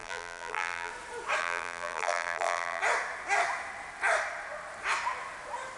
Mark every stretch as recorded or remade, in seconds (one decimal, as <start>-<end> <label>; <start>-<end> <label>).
0.0-0.9 remade; 0.9-1.4 recorded; 1.4-2.8 remade; 2.8-5.8 recorded